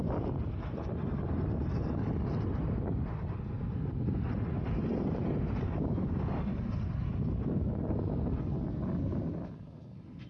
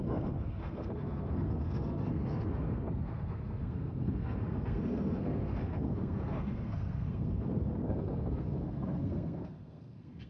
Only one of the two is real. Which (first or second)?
first